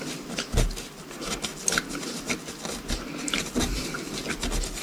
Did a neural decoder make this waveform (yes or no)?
no